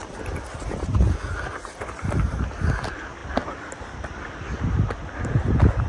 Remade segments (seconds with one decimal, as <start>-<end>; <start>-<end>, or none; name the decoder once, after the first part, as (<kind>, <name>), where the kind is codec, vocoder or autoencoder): 3.2-4.4 (vocoder, BigVGAN v2)